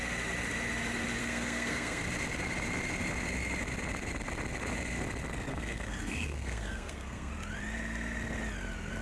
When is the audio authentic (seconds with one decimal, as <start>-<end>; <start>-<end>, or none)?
0.0-1.2; 2.0-5.5; 7.3-9.0